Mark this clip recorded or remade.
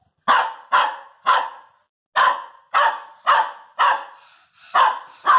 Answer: recorded